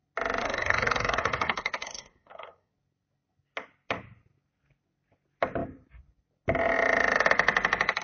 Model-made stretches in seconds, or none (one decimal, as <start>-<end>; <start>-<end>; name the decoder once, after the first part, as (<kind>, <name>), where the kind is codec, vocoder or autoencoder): 0.4-2.7 (codec, SNAC)